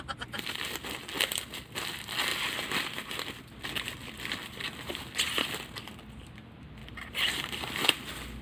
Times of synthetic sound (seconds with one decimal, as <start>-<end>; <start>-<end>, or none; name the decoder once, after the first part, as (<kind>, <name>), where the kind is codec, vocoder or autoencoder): 6.8-7.6 (vocoder, BigVGAN v2)